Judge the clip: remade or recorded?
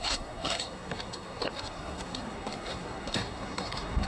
remade